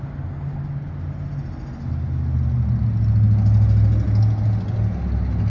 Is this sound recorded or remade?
recorded